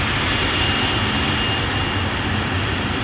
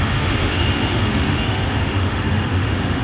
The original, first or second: first